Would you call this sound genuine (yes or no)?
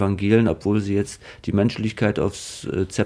yes